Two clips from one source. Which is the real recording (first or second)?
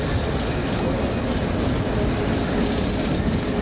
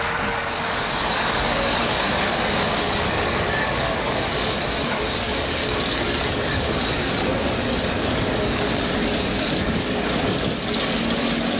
first